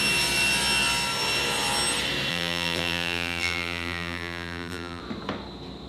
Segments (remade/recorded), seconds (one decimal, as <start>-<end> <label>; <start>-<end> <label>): 0.0-2.3 recorded; 2.3-5.0 remade; 5.0-5.9 recorded